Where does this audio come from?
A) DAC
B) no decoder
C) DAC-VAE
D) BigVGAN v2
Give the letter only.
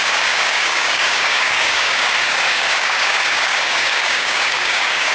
A